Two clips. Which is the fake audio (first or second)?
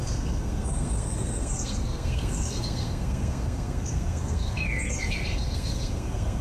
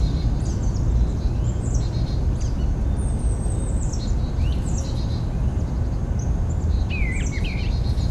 first